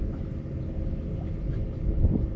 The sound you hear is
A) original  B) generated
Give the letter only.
A